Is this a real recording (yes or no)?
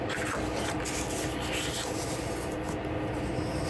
yes